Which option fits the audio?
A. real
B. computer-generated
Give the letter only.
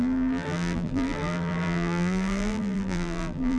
B